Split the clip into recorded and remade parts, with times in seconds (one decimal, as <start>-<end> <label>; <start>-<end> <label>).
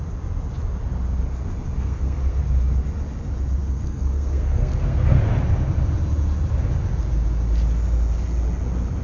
0.0-1.8 recorded; 1.8-2.4 remade; 2.4-3.6 recorded; 3.6-5.3 remade; 5.3-9.0 recorded